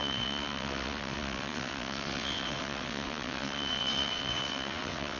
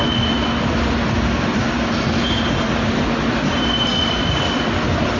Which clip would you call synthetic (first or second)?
first